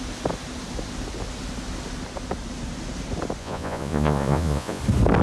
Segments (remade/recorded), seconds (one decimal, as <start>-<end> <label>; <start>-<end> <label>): 0.0-3.4 recorded; 3.4-4.8 remade; 4.8-5.2 recorded